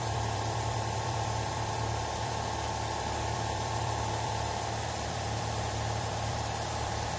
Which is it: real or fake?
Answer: fake